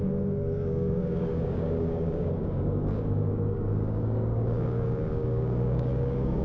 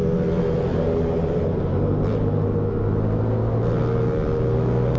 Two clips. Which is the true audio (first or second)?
second